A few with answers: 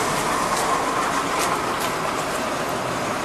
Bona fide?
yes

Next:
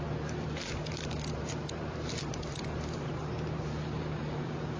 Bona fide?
no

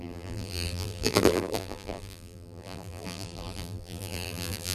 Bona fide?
no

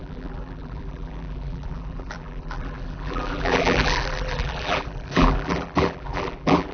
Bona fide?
no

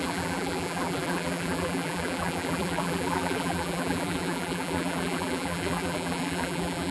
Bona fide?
no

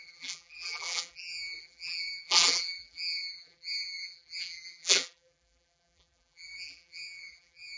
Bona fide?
no